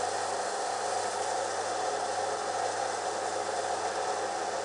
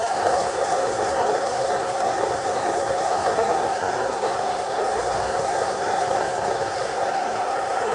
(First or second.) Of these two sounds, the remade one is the second